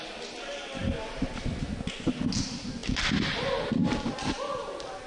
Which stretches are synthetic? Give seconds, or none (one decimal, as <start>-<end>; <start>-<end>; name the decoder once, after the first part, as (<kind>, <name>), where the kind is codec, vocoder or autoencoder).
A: none

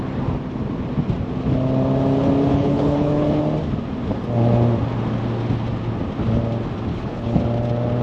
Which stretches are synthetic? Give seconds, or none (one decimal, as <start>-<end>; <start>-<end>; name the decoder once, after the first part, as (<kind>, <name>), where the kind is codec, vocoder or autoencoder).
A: 2.5-3.4 (codec, HILCodec); 6.9-7.4

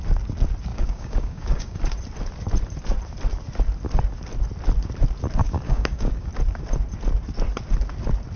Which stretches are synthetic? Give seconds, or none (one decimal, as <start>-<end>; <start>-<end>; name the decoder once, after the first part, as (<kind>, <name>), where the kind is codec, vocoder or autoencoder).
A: 0.7-1.8 (codec, DAC); 5.4-6.3

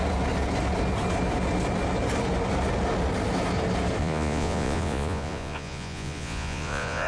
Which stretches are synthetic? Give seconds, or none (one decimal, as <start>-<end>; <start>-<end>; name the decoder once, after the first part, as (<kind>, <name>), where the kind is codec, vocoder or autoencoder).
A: 4.0-7.1 (vocoder, Vocos)

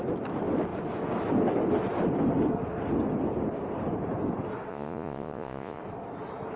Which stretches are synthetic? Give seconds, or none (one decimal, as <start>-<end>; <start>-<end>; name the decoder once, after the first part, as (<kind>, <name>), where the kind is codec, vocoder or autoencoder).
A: 4.7-5.8 (vocoder, Vocos)

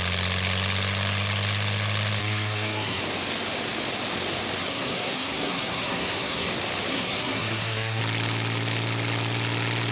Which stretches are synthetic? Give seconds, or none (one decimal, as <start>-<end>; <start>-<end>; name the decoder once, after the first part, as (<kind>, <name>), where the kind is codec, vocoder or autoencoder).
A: 2.2-3.0 (codec, SNAC); 4.6-6.5; 6.9-8.0